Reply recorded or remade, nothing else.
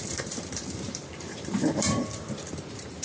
remade